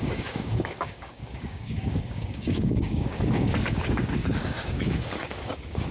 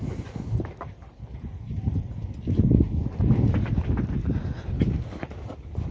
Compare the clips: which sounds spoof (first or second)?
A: first